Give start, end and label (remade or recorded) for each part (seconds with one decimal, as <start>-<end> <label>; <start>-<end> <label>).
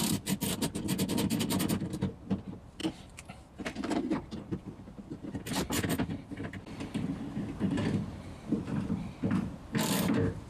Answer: 0.0-2.8 recorded; 2.8-5.4 remade; 5.4-10.5 recorded